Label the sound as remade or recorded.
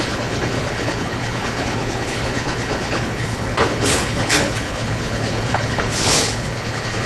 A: remade